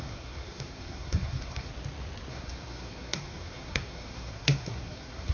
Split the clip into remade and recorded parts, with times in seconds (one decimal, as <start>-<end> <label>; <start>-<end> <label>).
0.0-1.7 remade; 1.7-2.3 recorded; 2.3-5.3 remade

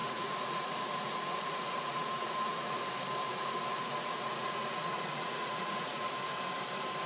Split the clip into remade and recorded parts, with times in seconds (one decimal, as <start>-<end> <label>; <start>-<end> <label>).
0.0-2.8 remade; 2.8-3.3 recorded; 3.3-6.1 remade; 6.1-7.1 recorded

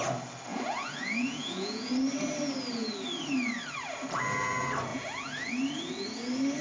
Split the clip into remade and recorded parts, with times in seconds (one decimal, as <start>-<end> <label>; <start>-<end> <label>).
0.0-0.5 recorded; 0.5-1.9 remade; 1.9-4.9 recorded; 4.9-5.5 remade; 5.5-6.6 recorded

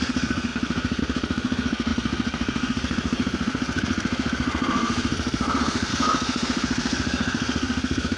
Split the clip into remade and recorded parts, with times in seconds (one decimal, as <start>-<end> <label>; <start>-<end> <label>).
0.0-8.2 remade